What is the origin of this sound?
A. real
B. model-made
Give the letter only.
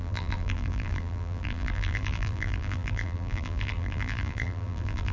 B